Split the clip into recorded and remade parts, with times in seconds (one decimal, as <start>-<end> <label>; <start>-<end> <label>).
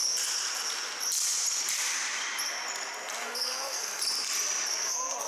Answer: 0.0-3.2 recorded; 3.2-3.9 remade; 3.9-4.7 recorded; 4.7-5.3 remade